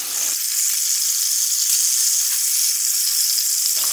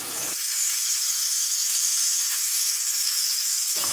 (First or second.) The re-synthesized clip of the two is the second